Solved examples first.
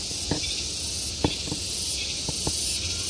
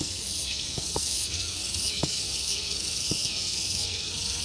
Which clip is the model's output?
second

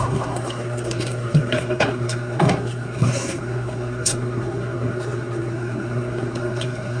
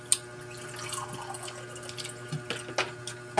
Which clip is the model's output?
first